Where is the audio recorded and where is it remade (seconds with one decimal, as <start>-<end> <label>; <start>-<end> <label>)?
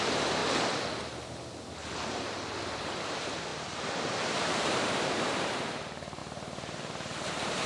0.0-0.4 remade; 0.4-2.8 recorded; 2.8-7.7 remade